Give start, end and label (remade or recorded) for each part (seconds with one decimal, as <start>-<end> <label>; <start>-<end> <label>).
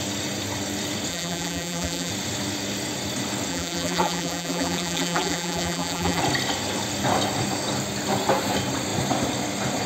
0.0-1.1 recorded; 1.1-2.1 remade; 2.1-3.5 recorded; 3.5-6.2 remade; 6.2-9.9 recorded